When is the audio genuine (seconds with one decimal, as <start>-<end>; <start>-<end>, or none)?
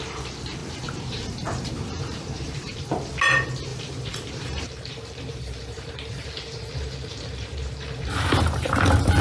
0.0-0.6; 2.9-3.7; 8.7-9.2